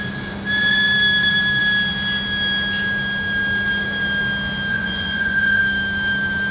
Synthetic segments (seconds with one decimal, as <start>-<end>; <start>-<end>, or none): 4.7-5.6